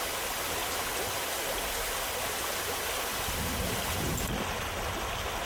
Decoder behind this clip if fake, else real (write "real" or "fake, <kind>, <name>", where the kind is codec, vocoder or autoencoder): real